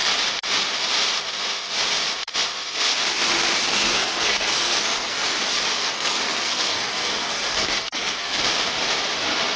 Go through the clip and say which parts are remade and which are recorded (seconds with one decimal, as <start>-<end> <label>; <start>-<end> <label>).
0.0-3.7 recorded; 3.7-8.4 remade; 8.4-9.6 recorded